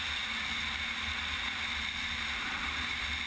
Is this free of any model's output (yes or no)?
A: no